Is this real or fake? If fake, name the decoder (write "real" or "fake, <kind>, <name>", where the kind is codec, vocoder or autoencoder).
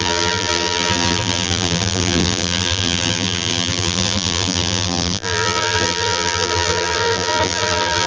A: fake, vocoder, BigVGAN v2